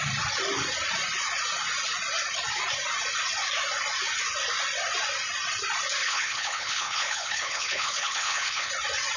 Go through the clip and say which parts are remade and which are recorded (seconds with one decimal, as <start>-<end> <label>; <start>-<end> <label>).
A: 0.0-6.0 recorded; 6.0-8.7 remade; 8.7-9.2 recorded

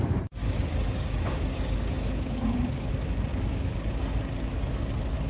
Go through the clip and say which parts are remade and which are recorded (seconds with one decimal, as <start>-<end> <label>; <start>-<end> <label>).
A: 0.0-0.4 recorded; 0.4-2.9 remade; 2.9-3.3 recorded; 3.3-3.9 remade; 3.9-5.3 recorded